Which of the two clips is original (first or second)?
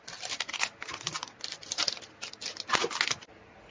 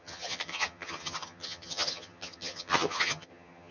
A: first